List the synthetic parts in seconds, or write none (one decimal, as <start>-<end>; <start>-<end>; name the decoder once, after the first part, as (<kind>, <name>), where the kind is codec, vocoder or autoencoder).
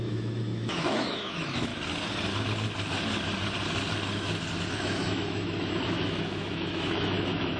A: 0.0-1.7 (autoencoder, DAC-VAE); 4.7-7.6